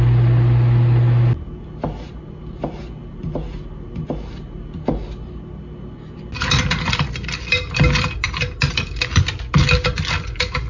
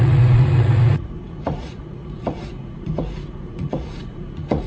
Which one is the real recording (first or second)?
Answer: first